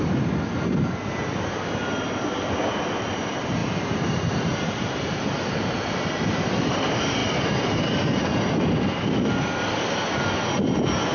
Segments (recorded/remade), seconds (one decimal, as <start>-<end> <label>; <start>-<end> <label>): 0.0-11.1 recorded